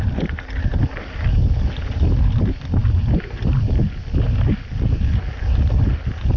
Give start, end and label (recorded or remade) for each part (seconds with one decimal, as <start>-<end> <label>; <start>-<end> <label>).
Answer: 0.0-6.4 recorded